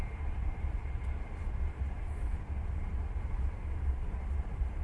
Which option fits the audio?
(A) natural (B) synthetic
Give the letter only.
B